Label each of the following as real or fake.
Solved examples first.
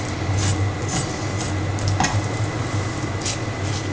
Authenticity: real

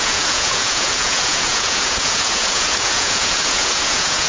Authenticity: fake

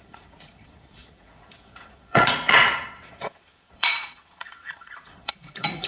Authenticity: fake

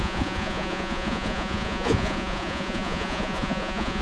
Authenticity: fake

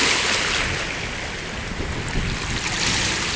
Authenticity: real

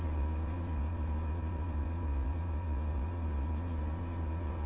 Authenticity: fake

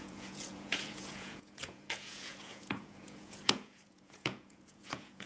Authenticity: fake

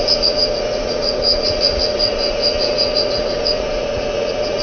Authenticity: fake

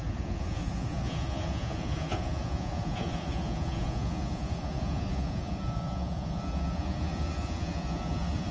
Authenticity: fake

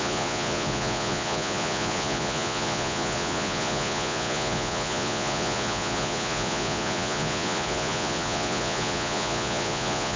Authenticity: fake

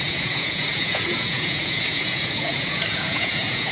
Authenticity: fake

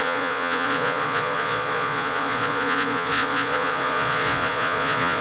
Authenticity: fake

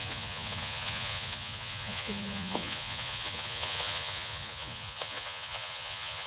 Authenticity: fake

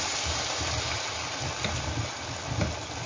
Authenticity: real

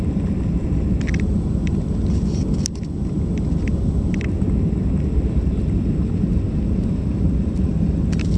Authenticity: real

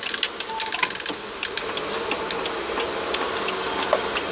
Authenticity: real